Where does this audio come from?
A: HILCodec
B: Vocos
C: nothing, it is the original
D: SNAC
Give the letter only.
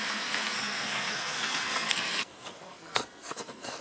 D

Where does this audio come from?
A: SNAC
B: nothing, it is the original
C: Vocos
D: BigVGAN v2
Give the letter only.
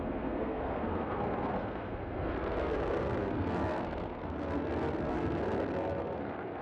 A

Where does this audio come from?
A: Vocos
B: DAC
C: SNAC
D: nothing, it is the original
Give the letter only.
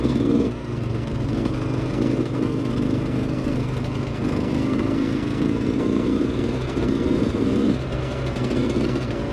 C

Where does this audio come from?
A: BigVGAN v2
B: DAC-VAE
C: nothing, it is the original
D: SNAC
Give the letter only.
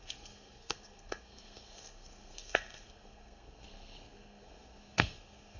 D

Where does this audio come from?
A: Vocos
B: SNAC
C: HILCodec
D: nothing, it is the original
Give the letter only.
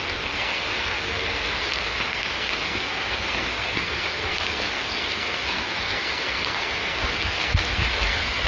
B